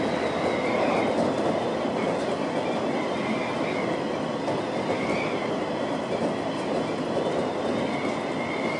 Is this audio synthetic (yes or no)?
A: no